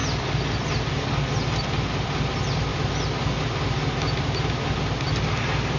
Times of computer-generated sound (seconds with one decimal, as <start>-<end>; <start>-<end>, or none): none